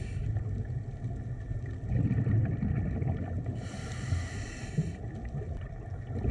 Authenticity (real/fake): real